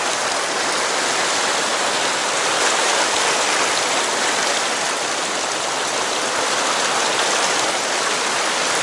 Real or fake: fake